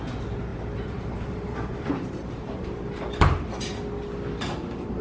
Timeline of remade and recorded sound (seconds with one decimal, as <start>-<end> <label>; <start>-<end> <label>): 0.0-0.5 recorded; 0.5-3.5 remade; 3.5-5.0 recorded